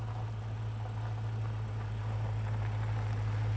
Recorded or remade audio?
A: recorded